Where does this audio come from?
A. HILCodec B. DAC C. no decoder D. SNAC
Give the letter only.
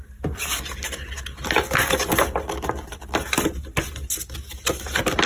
C